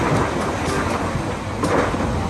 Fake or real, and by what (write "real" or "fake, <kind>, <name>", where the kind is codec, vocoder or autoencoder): real